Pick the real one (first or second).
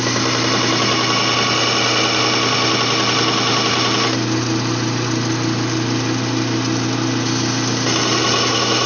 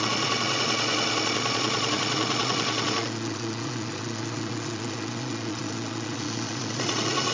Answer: first